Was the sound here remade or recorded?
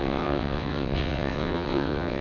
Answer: remade